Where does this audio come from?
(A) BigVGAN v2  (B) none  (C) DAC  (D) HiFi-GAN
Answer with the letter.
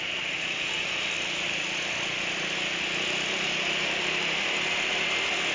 B